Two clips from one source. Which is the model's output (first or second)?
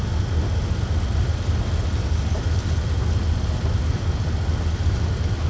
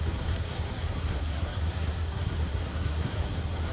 second